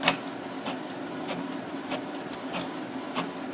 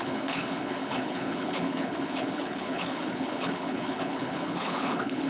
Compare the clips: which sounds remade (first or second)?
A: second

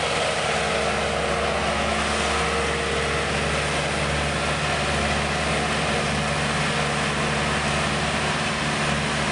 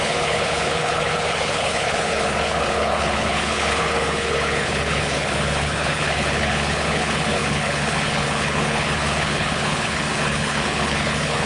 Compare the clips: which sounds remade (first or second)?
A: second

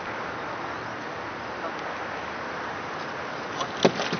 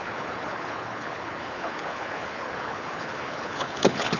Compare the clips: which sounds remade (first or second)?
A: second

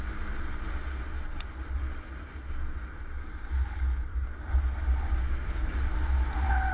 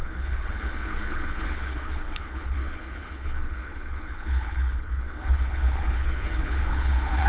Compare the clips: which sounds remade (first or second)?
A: second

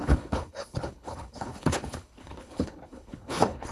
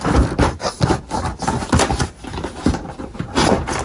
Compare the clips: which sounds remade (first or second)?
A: first